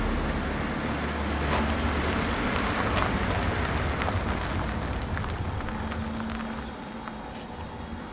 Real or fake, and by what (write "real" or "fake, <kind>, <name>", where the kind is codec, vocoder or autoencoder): real